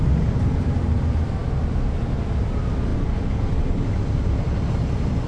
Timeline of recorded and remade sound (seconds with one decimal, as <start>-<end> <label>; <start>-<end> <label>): 0.0-5.3 recorded